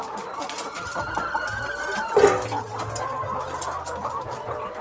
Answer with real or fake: real